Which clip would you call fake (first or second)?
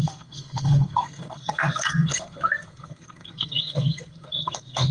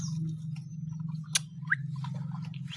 first